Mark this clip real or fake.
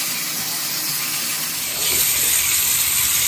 fake